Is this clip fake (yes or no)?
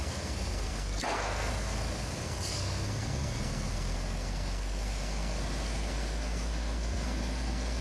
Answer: yes